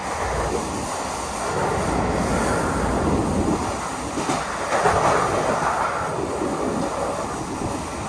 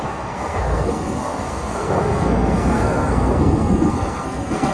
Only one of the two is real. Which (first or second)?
first